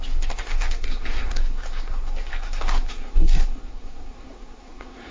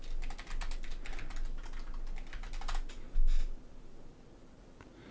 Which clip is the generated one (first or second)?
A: first